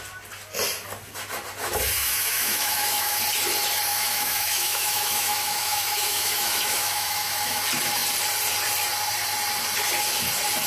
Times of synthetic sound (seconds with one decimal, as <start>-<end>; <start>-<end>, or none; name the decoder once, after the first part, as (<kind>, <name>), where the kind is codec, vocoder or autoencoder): 2.0-3.2 (autoencoder, DAC-VAE); 3.9-7.6

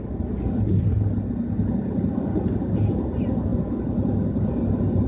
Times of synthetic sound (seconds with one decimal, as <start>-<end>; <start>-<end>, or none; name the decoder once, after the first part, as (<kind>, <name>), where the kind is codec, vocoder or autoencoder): none

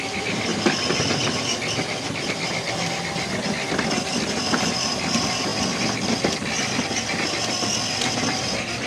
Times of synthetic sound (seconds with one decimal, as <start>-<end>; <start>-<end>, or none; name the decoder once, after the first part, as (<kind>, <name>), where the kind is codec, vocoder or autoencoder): none

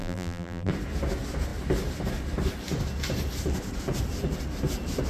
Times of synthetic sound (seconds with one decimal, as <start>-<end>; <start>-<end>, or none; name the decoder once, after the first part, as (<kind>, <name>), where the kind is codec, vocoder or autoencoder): 0.0-0.7 (vocoder, BigVGAN v2)

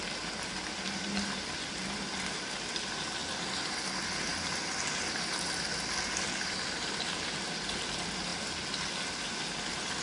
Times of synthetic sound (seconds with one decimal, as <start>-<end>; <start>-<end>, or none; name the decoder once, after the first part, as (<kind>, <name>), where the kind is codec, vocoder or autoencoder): none